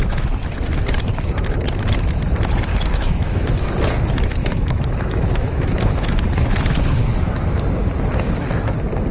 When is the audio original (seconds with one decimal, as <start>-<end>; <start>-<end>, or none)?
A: 0.0-2.7; 3.7-4.4; 6.2-9.1